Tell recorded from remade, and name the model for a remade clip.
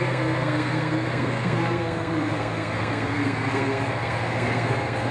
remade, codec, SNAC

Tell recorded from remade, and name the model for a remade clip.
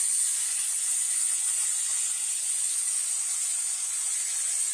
remade, vocoder, Vocos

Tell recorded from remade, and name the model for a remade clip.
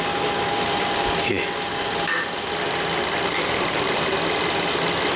recorded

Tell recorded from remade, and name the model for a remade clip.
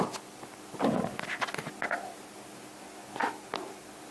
recorded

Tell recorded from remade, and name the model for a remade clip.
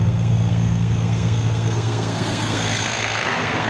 remade, codec, SNAC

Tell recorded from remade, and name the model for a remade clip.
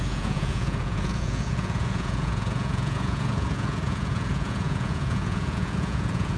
remade, vocoder, Vocos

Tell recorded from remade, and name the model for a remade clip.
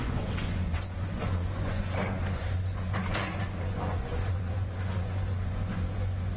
remade, vocoder, Vocos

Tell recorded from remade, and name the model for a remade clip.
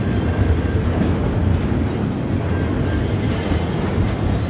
recorded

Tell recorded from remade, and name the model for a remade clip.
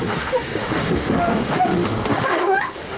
remade, autoencoder, DAC-VAE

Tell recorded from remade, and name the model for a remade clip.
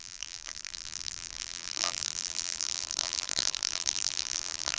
remade, vocoder, BigVGAN v2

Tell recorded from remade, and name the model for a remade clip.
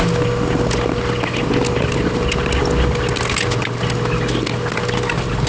recorded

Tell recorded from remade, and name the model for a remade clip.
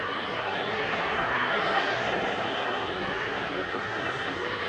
remade, codec, SNAC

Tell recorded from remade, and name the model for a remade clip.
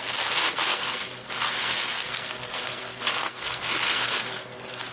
remade, codec, SNAC